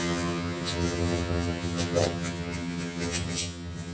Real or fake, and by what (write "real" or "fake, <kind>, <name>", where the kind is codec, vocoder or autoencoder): fake, vocoder, HiFi-GAN